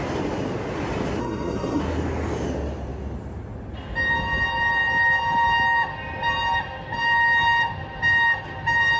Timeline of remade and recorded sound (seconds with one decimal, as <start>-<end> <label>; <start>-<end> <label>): 0.0-1.2 recorded; 1.2-1.8 remade; 1.8-9.0 recorded